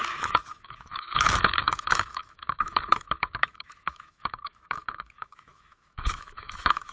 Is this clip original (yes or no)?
no